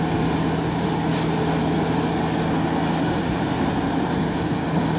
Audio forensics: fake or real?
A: real